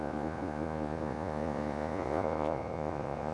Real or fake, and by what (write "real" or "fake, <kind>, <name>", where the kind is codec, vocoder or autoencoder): fake, vocoder, Vocos